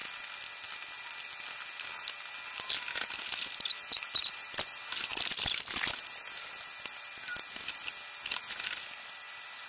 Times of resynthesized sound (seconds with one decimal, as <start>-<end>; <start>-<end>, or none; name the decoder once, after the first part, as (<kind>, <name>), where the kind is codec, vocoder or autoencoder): none